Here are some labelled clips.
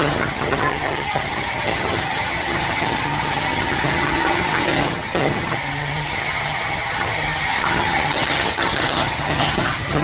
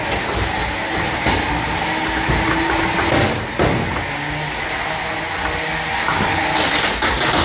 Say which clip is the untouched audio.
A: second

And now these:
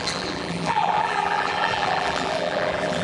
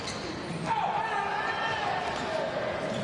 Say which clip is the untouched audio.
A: second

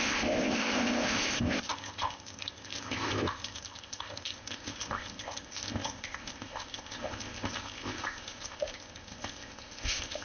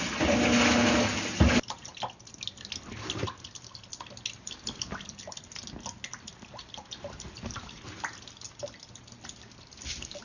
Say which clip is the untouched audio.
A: second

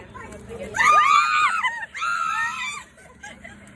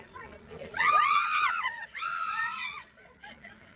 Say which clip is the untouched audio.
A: first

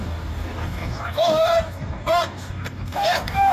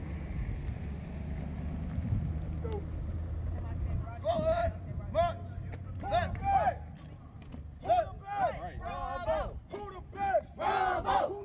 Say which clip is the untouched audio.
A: second